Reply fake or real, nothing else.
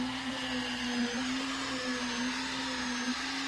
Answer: real